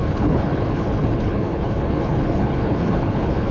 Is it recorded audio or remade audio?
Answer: remade